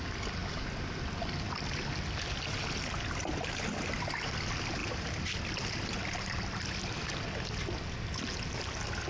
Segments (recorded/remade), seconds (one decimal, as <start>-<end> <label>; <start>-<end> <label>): 0.0-9.1 recorded